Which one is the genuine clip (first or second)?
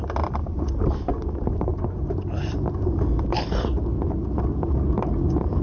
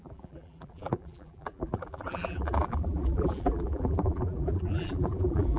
first